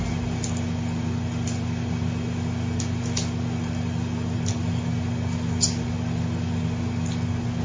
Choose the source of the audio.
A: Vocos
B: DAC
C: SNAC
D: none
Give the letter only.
D